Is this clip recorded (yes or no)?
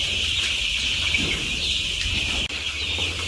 no